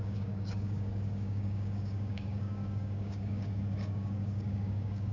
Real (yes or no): no